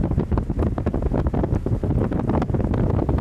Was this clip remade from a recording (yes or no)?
no